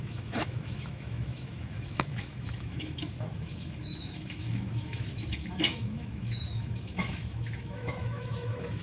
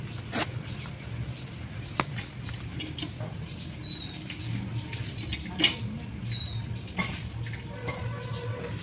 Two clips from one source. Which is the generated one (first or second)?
first